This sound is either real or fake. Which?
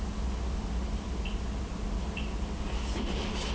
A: real